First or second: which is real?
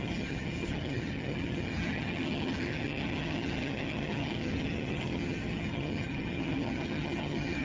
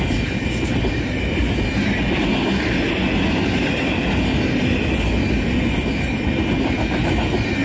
second